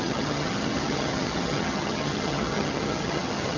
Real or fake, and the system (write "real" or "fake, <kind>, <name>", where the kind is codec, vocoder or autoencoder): fake, vocoder, HiFi-GAN